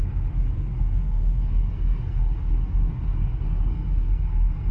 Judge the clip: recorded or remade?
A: remade